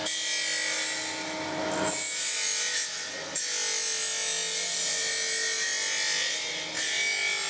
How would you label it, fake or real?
real